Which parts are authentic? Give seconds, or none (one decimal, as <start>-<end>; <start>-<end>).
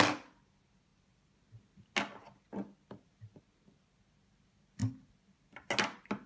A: 0.0-6.3